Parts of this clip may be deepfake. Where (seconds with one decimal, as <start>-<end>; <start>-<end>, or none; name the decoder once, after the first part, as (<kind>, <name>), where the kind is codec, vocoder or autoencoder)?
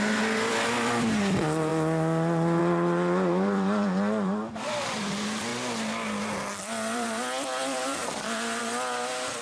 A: 0.0-1.7 (vocoder, BigVGAN v2); 2.6-5.5; 6.6-8.0; 8.6-9.4